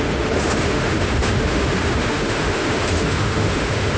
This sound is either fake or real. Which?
fake